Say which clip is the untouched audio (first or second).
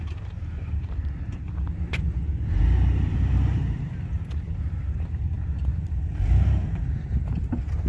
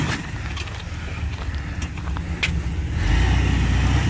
second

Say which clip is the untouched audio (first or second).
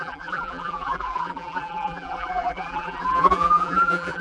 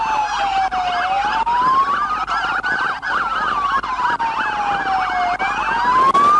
second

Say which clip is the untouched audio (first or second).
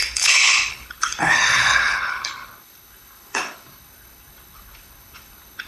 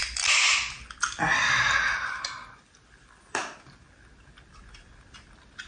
second